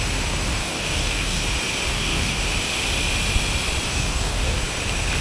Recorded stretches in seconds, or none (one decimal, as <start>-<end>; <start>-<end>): 0.0-0.6; 1.4-1.9; 2.4-3.9; 4.6-5.2